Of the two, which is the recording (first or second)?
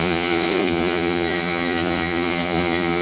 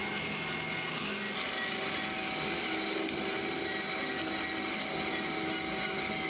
second